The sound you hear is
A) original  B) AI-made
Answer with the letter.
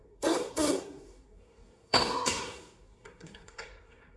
B